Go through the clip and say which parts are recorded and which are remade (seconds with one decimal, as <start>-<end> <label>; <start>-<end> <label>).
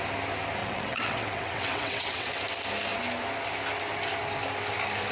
0.0-0.6 recorded; 0.6-2.3 remade; 2.3-5.1 recorded